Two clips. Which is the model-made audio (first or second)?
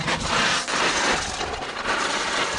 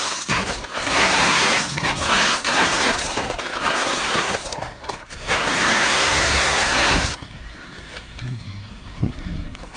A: second